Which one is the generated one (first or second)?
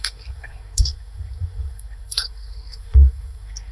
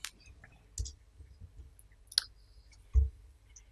first